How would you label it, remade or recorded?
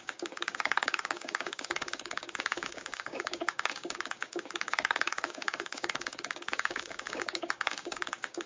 remade